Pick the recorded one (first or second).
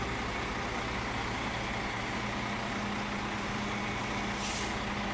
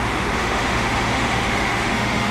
first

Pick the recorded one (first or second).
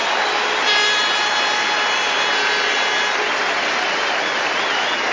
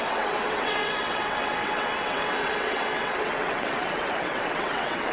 first